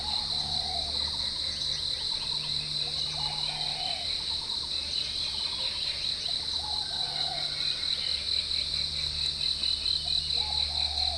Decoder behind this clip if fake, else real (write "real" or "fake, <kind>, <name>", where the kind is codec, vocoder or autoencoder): real